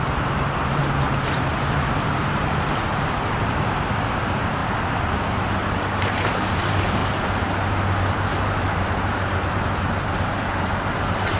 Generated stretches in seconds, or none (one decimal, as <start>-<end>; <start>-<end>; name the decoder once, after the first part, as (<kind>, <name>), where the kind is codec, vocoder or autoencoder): 0.0-0.8 (vocoder, BigVGAN v2); 1.5-4.6; 6.0-7.0; 8.1-11.4